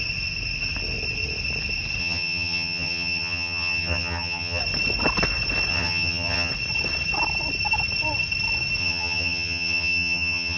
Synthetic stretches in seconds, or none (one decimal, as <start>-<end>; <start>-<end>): 2.0-4.6; 5.7-6.5; 8.8-10.6